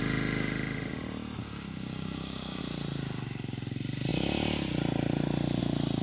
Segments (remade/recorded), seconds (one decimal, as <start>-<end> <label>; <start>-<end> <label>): 0.0-1.4 recorded; 1.4-2.6 remade; 2.6-6.0 recorded

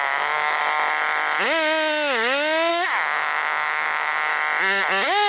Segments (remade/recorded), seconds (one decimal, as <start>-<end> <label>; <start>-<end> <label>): 0.0-0.6 remade; 0.6-2.7 recorded; 2.7-4.3 remade; 4.3-5.3 recorded

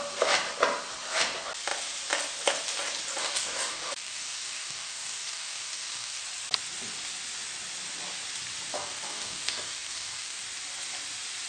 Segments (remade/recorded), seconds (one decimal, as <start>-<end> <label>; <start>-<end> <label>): 0.0-3.2 recorded; 3.2-6.2 remade; 6.2-8.7 recorded; 8.7-10.4 remade; 10.4-11.5 recorded

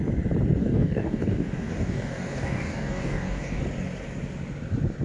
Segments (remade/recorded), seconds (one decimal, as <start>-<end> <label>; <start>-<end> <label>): 0.0-0.6 recorded; 0.6-3.6 remade; 3.6-5.0 recorded

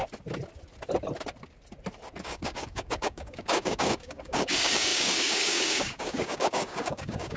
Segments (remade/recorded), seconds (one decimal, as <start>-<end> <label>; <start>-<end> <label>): 0.0-2.2 recorded; 2.2-7.4 remade

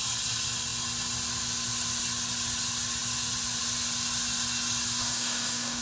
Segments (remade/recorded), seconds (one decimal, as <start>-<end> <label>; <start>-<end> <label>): 0.0-5.0 recorded; 5.0-5.8 remade

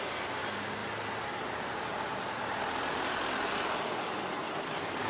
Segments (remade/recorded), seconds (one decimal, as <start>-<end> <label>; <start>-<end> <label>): 0.0-5.1 recorded

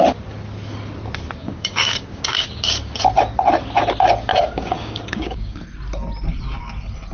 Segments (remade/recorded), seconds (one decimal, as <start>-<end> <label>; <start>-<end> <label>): 0.0-1.4 recorded; 1.4-3.0 remade; 3.0-4.3 recorded; 4.3-5.6 remade; 5.6-7.1 recorded